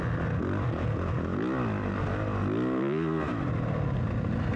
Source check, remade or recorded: recorded